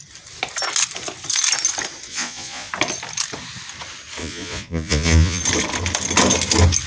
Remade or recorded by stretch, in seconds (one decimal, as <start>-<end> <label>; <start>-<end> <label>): 0.0-2.1 recorded; 2.1-2.7 remade; 2.7-4.2 recorded; 4.2-5.4 remade; 5.4-6.9 recorded